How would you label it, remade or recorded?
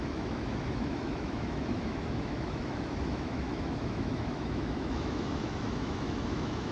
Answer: remade